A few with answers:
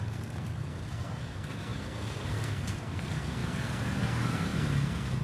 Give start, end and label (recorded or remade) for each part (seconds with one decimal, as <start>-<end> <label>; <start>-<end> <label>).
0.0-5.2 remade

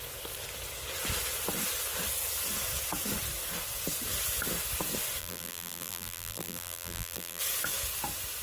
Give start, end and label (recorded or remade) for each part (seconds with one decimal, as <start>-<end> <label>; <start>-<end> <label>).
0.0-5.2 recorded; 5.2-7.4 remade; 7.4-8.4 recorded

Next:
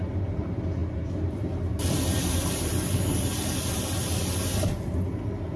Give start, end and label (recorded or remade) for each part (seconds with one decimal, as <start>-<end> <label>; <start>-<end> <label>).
0.0-5.6 recorded

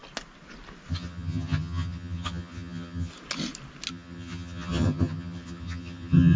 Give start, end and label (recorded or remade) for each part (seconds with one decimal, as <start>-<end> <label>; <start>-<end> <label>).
0.0-0.9 recorded; 0.9-3.1 remade; 3.1-3.9 recorded; 3.9-6.4 remade

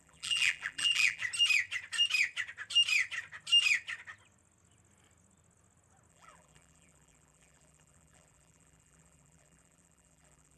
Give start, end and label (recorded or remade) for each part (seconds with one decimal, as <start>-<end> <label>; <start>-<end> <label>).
0.0-1.2 remade; 1.2-6.1 recorded; 6.1-10.6 remade